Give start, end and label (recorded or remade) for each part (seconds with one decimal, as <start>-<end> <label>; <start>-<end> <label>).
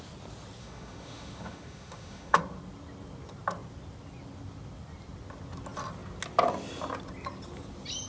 0.0-0.6 recorded; 0.6-2.4 remade; 2.4-8.1 recorded